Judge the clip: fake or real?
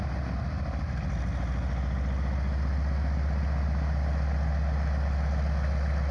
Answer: real